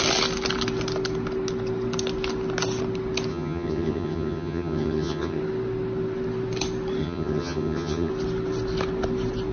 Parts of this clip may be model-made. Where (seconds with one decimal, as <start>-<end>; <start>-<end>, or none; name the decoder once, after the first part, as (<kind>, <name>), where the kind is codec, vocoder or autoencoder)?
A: 3.3-5.4 (vocoder, HiFi-GAN); 7.0-8.1